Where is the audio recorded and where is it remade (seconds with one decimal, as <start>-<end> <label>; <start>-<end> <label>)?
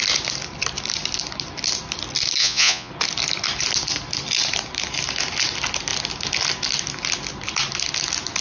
0.0-2.4 recorded; 2.4-2.9 remade; 2.9-8.4 recorded